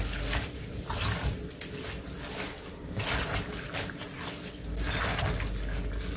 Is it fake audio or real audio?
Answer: real